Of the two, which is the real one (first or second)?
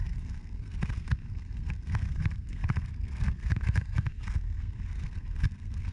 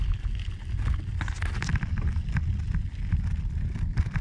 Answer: second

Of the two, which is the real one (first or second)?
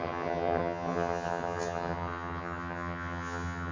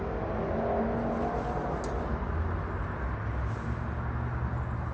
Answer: second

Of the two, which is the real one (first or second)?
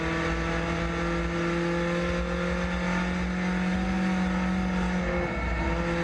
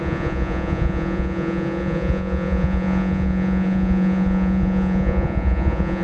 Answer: first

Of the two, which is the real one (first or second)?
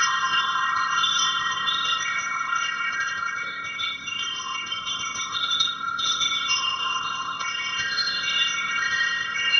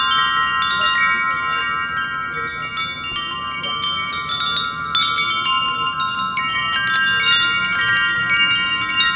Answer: second